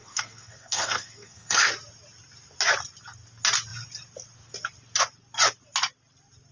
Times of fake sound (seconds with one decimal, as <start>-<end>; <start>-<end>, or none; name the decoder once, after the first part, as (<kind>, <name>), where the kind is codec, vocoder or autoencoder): 0.0-1.7 (codec, SNAC)